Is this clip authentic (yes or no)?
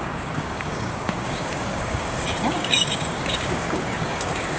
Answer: no